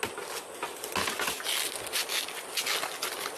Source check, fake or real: real